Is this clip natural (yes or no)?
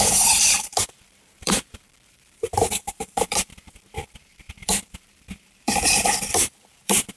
no